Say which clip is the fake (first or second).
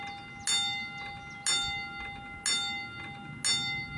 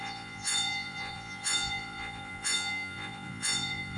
second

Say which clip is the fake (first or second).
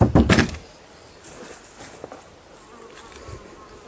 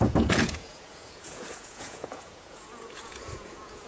second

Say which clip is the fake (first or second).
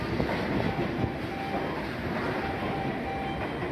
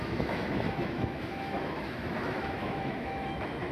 second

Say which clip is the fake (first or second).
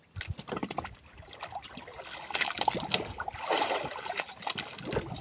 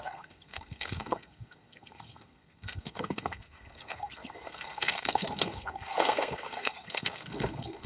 second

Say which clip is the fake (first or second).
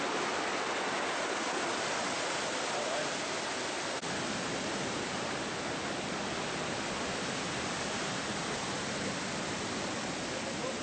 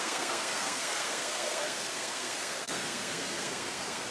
second